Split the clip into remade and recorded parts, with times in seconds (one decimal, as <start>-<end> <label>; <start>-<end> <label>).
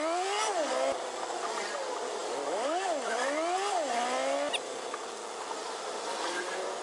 0.0-6.8 recorded